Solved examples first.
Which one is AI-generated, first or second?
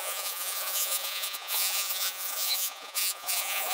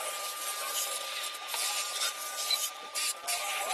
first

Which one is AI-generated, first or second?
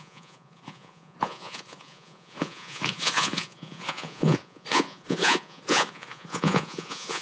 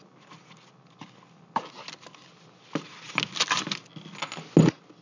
first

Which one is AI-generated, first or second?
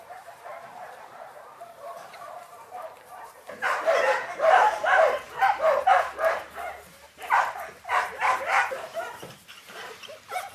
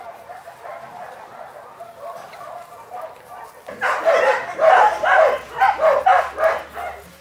first